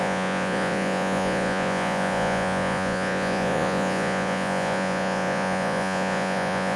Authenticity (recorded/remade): remade